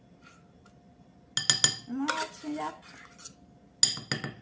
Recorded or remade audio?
recorded